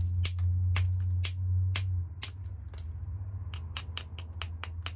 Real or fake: real